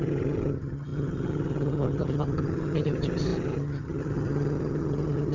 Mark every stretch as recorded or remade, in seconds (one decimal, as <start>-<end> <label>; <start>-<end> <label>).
0.0-5.3 remade